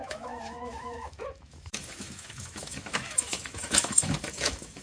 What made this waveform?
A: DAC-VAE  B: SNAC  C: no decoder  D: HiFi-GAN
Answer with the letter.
A